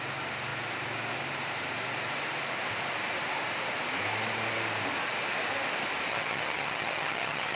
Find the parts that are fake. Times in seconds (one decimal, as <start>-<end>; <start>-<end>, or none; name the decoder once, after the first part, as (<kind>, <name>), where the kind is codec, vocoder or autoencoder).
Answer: 6.1-7.6 (vocoder, HiFi-GAN)